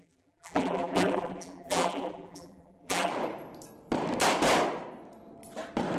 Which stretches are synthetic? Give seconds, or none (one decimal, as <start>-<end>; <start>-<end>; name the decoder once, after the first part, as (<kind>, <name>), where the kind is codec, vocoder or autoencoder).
0.0-3.1 (vocoder, BigVGAN v2)